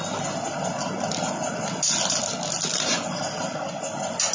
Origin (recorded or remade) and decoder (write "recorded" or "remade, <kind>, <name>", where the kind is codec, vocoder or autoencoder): recorded